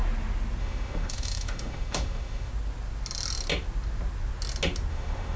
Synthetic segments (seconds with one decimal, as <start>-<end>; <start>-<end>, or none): 0.6-2.5; 4.9-5.4